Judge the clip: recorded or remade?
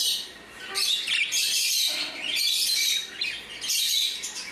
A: recorded